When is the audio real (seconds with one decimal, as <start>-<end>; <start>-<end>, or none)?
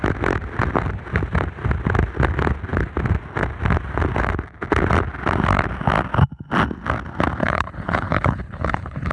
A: 0.0-7.4